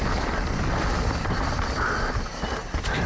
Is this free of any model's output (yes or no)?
yes